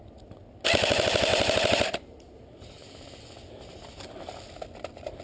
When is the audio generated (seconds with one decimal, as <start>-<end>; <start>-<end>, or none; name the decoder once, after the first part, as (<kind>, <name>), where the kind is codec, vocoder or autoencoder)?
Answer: 1.3-3.2 (vocoder, BigVGAN v2)